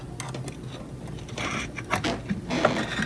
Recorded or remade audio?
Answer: recorded